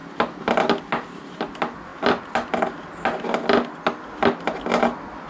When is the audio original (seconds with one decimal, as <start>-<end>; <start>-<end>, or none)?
0.0-5.3